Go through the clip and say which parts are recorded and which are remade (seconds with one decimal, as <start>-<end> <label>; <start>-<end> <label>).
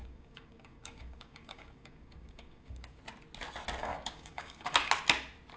0.0-3.0 remade; 3.0-3.8 recorded; 3.8-4.9 remade; 4.9-5.6 recorded